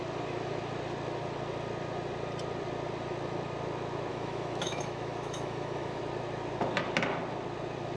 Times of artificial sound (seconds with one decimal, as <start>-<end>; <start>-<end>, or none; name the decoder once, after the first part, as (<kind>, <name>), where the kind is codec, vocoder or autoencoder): 4.1-6.0 (autoencoder, DAC-VAE)